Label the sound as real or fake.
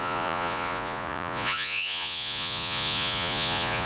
fake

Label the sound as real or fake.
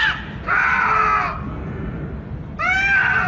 real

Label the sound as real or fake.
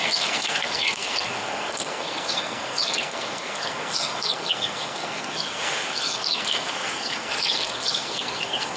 fake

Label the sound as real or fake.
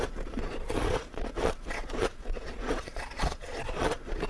fake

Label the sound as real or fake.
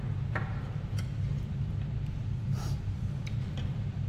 fake